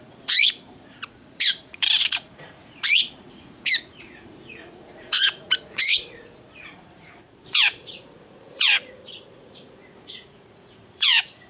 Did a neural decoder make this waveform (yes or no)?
yes